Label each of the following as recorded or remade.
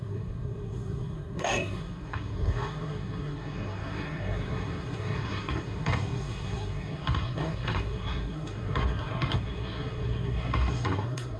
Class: remade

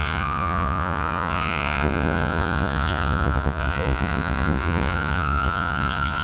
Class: remade